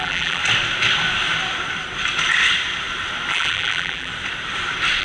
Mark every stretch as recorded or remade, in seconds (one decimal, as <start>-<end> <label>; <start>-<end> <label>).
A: 0.0-0.4 remade; 0.4-3.3 recorded; 3.3-4.1 remade; 4.1-5.0 recorded